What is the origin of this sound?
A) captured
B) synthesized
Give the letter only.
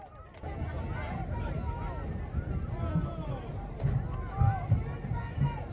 A